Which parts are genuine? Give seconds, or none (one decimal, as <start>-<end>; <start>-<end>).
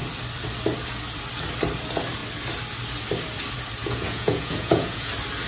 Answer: 0.0-3.8; 5.1-5.5